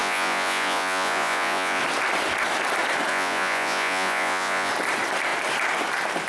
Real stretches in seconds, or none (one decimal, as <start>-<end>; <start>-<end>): 1.8-3.1; 4.7-6.3